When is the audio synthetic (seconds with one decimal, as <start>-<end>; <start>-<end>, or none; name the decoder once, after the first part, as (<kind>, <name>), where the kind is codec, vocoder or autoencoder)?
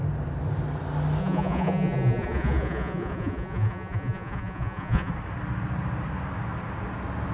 1.2-5.1 (vocoder, Vocos)